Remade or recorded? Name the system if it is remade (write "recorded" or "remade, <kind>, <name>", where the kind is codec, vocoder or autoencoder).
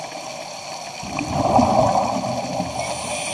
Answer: recorded